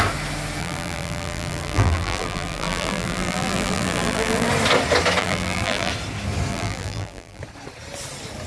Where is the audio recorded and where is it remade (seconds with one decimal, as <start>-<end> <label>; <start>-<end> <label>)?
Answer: 0.0-0.6 recorded; 0.6-4.5 remade; 4.5-5.2 recorded; 5.2-5.9 remade; 5.9-6.5 recorded; 6.5-7.4 remade; 7.4-8.5 recorded